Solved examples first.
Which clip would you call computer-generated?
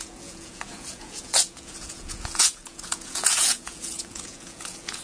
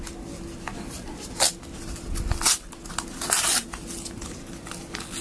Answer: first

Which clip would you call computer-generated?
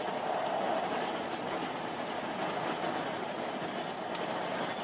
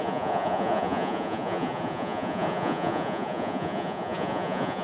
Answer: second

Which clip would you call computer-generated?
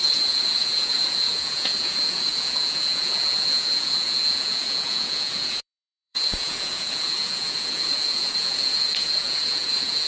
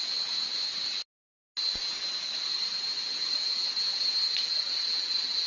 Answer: first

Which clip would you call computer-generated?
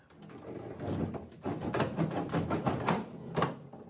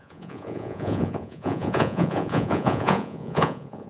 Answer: second